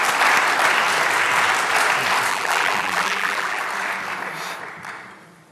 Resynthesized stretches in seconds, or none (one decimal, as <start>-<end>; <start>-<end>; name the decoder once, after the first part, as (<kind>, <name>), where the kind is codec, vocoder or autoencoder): 2.3-3.6 (vocoder, BigVGAN v2)